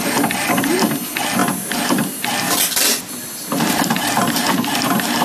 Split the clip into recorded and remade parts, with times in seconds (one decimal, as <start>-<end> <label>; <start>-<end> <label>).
0.0-1.4 recorded; 1.4-4.5 remade; 4.5-5.2 recorded